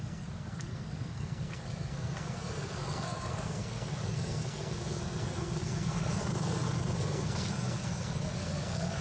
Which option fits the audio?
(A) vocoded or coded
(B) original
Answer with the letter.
A